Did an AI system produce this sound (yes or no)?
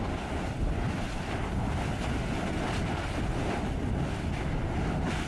no